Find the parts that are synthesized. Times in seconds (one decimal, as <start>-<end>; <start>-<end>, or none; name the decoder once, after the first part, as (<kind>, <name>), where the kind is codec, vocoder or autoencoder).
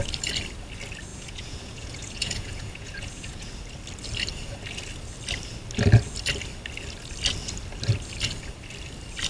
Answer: 1.1-3.5 (vocoder, Vocos)